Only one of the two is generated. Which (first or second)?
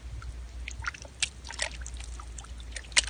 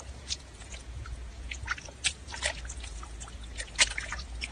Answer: second